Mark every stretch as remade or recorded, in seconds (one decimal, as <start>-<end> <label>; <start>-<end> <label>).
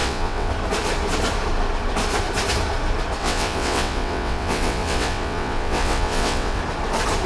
0.0-0.5 remade; 0.5-3.2 recorded; 3.2-6.6 remade; 6.6-7.3 recorded